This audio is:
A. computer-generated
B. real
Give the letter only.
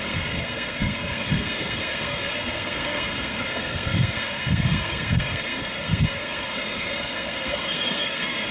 A